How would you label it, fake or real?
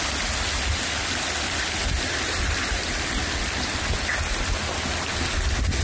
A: real